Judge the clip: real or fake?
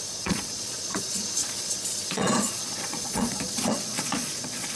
fake